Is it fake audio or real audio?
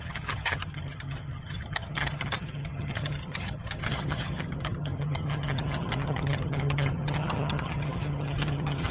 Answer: fake